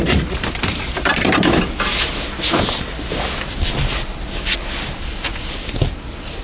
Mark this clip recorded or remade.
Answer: recorded